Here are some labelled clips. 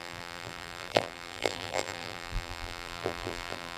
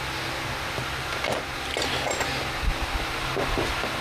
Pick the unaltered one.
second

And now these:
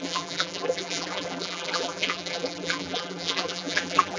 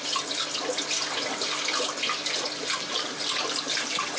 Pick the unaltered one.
second